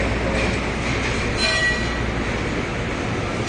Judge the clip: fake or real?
real